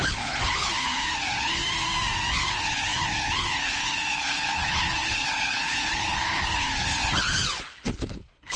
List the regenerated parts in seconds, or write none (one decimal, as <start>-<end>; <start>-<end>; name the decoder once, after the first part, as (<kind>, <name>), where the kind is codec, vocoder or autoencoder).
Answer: 0.0-1.6 (codec, HILCodec); 2.3-8.6